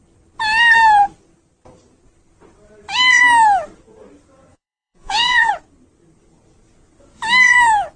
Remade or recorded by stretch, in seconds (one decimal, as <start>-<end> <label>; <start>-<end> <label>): 0.0-4.5 recorded; 4.5-5.5 remade; 5.5-8.0 recorded